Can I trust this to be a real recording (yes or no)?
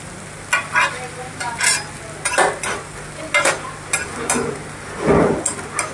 yes